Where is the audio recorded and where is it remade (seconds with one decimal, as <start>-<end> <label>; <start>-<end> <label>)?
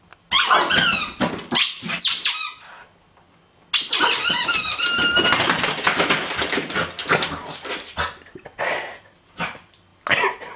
0.0-10.6 recorded